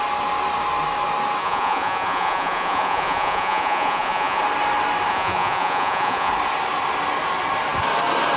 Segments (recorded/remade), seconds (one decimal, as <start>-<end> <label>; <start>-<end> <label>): 0.0-1.4 recorded; 1.4-4.4 remade; 4.4-5.1 recorded; 5.1-6.3 remade; 6.3-8.4 recorded